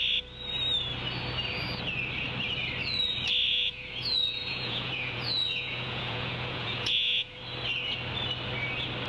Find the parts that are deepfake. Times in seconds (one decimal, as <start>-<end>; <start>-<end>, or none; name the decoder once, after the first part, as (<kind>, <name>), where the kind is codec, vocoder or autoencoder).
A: 3.5-7.4 (vocoder, Vocos)

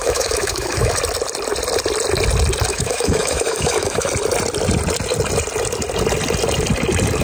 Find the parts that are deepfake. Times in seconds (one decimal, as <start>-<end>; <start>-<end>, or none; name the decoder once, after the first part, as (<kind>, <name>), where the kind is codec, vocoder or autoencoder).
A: 0.0-0.9 (autoencoder, DAC-VAE); 2.7-4.1

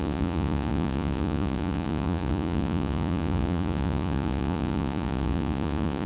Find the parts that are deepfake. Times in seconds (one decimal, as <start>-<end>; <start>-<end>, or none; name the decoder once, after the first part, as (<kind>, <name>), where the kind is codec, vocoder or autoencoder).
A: 0.0-6.1 (vocoder, Vocos)

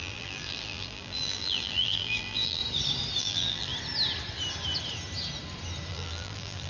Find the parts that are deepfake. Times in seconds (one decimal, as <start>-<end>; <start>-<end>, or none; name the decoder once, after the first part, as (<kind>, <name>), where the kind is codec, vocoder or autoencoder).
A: 0.0-2.6 (vocoder, BigVGAN v2); 3.2-3.7; 5.9-6.7

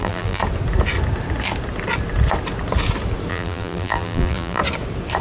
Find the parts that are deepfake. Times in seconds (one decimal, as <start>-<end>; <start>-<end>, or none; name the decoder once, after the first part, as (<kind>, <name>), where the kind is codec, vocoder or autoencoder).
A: 0.0-0.4 (vocoder, BigVGAN v2); 3.3-4.6

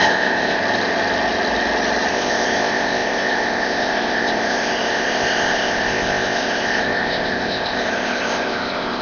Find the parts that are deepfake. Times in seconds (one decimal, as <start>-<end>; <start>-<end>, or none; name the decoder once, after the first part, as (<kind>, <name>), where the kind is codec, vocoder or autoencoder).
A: 0.0-0.6 (codec, ZipCodec); 2.1-9.0

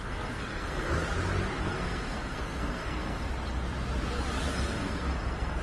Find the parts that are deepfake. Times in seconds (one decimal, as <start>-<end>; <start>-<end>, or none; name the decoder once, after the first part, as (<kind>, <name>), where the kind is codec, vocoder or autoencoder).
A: 0.0-0.9 (codec, SNAC); 1.6-3.3; 4.5-5.6